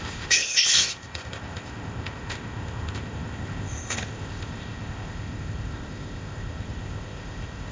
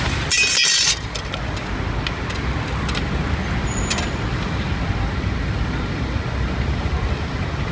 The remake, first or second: first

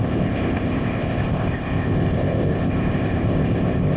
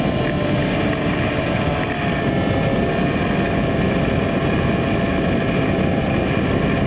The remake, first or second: first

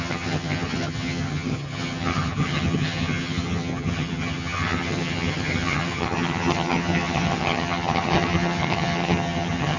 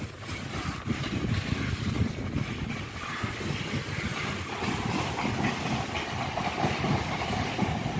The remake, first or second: first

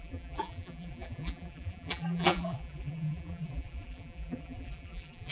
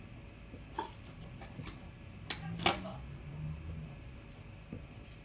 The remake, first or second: first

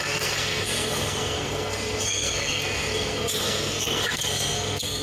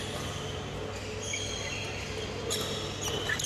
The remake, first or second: first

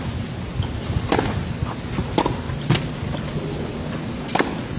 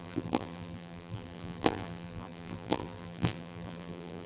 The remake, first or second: second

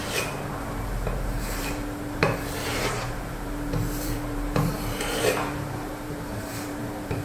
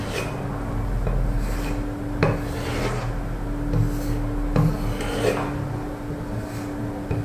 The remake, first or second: first